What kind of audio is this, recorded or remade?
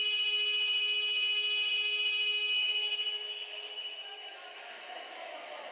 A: remade